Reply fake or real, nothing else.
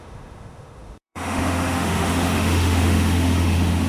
fake